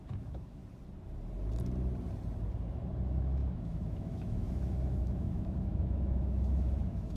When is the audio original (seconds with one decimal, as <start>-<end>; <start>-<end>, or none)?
0.6-3.0